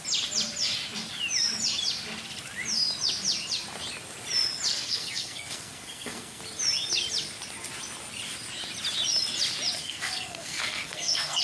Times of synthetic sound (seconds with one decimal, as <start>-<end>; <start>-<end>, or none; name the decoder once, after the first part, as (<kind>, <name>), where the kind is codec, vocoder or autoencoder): 4.7-6.4 (codec, SNAC); 9.8-11.4